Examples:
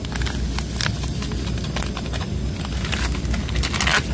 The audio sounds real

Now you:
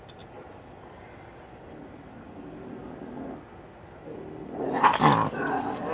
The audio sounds real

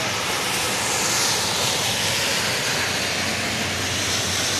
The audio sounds real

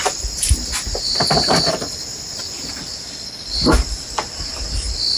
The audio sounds real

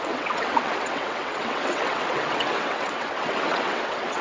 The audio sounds fake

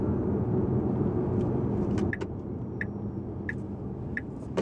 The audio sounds real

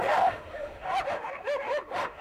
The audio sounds fake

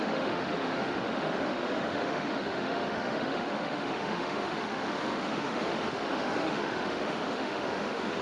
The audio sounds fake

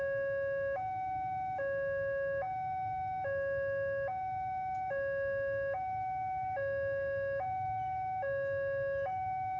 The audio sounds real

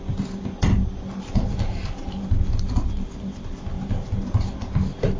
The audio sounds real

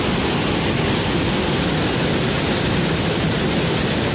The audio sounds real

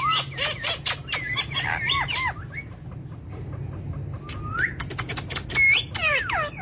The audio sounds real